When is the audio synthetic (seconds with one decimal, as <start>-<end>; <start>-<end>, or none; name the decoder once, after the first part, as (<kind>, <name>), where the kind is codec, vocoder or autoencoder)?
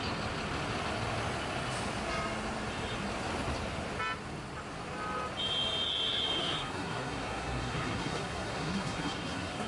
6.4-9.7 (codec, SNAC)